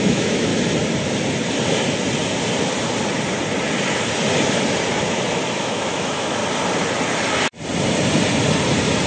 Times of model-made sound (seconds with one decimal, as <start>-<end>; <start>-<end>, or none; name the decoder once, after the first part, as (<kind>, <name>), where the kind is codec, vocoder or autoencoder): 0.0-0.5 (autoencoder, DAC-VAE); 5.5-6.4